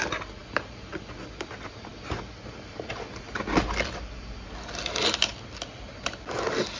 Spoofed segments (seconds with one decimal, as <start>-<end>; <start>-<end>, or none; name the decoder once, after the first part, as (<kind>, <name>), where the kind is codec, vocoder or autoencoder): none